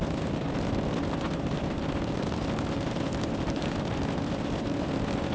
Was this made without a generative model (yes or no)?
yes